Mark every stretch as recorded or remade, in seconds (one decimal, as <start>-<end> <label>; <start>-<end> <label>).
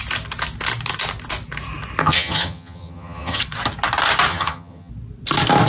0.0-2.0 recorded; 2.0-3.4 remade; 3.4-4.3 recorded; 4.3-4.9 remade; 4.9-5.7 recorded